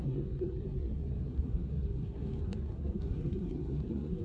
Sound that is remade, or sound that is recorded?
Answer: remade